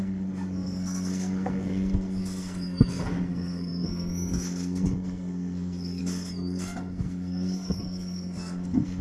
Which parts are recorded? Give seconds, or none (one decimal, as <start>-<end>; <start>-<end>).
none